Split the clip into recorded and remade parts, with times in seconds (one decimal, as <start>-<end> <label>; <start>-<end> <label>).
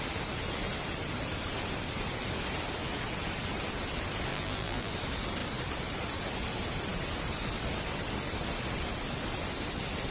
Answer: 0.0-4.3 recorded; 4.3-4.9 remade; 4.9-10.1 recorded